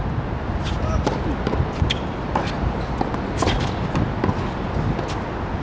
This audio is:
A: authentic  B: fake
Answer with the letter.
A